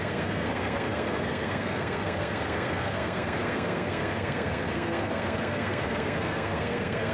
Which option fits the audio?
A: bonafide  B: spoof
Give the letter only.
B